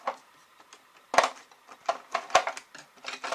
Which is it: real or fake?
real